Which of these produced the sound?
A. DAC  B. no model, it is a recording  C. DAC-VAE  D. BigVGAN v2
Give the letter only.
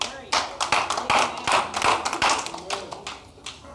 B